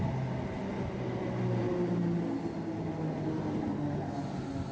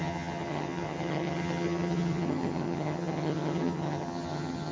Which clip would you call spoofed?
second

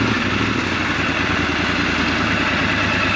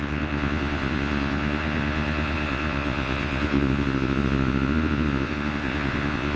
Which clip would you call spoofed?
second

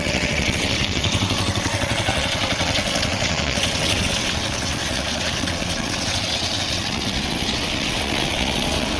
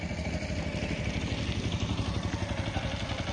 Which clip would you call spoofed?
first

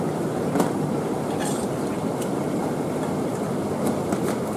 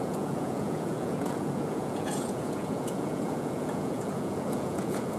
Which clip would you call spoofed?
second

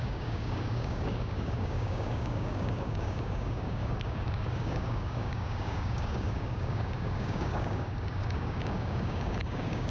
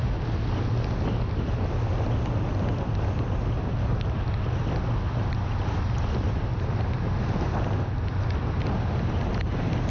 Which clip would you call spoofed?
first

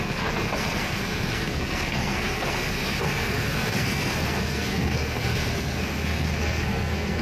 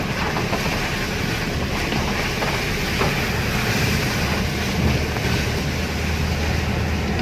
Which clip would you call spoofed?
first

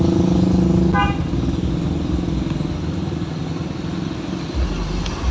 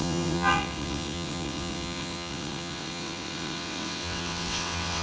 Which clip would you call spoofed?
second